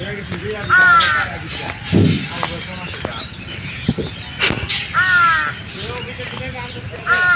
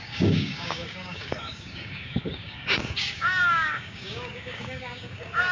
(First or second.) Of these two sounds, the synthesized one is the second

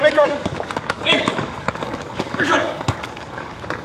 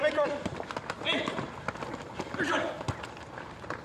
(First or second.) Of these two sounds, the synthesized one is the first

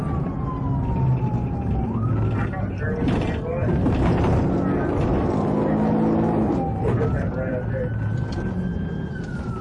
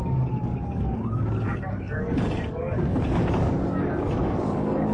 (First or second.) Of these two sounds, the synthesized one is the second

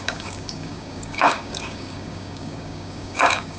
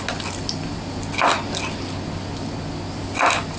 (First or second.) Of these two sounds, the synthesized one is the first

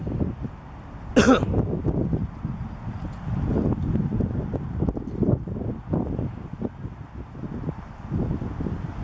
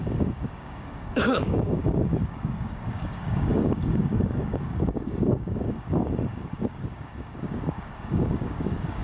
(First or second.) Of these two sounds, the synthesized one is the second